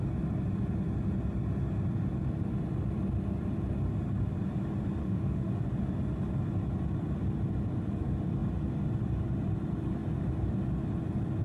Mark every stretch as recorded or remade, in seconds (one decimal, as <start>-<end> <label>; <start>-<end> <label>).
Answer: 0.0-5.0 recorded; 5.0-5.5 remade; 5.5-11.4 recorded